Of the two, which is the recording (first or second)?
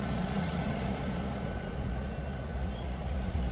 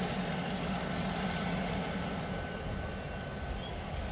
second